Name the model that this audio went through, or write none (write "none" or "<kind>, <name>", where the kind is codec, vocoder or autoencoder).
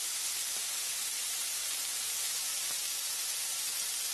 vocoder, BigVGAN v2